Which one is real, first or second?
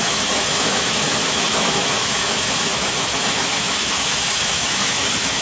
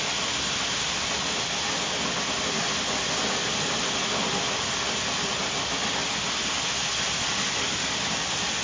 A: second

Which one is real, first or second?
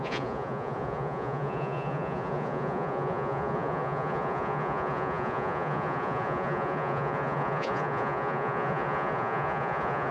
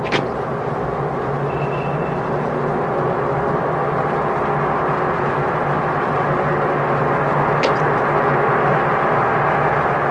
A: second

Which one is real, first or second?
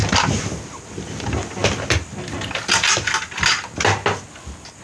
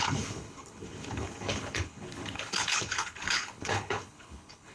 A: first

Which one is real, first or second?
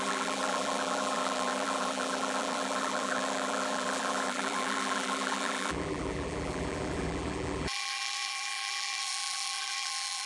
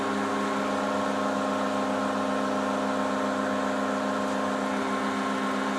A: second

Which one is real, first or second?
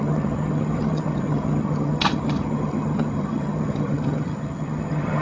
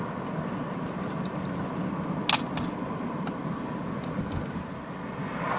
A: second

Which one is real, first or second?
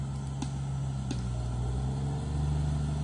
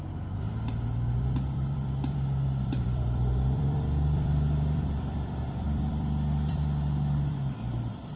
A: first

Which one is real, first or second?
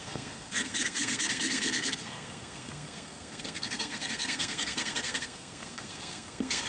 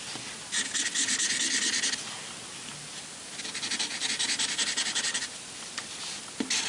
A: second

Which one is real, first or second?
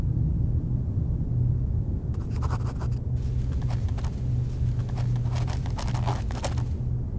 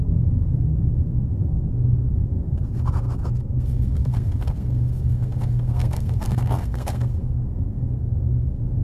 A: first